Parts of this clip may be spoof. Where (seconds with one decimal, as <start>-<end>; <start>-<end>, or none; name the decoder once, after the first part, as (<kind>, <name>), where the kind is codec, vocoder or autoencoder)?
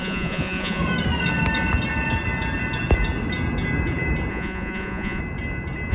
0.0-0.8 (vocoder, Vocos); 4.3-5.2